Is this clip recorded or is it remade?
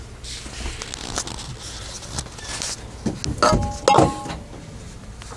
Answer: recorded